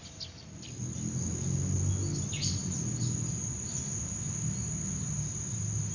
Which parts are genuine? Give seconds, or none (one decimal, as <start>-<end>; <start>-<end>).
0.0-5.9